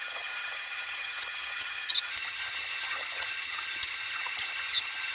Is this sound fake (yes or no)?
yes